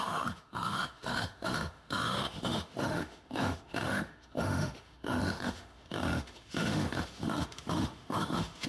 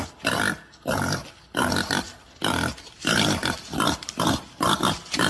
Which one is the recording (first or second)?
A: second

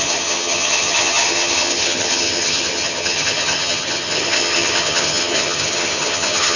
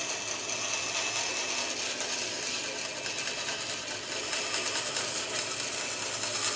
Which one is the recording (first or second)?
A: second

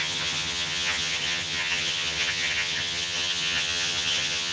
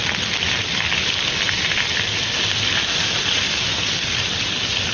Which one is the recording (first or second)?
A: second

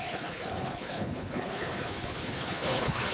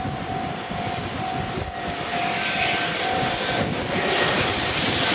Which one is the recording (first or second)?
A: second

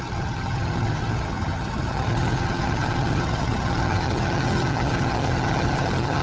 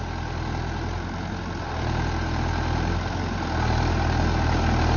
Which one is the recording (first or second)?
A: second